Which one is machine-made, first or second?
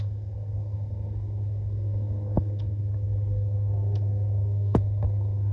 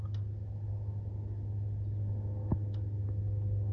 first